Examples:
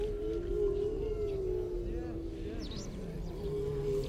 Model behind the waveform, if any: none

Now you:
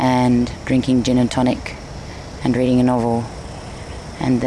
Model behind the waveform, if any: none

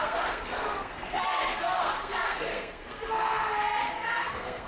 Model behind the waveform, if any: codec, SNAC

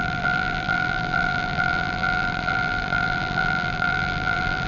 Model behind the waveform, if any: vocoder, BigVGAN v2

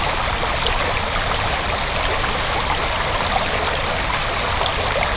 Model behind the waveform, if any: none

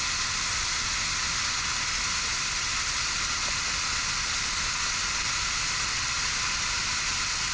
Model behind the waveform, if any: none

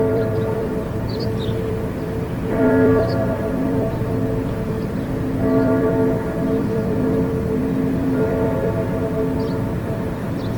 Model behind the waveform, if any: vocoder, BigVGAN v2